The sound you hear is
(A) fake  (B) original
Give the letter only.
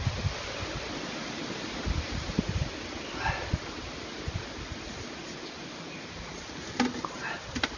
B